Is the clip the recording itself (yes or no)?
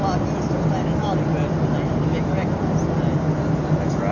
yes